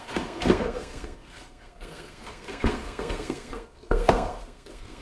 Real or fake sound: fake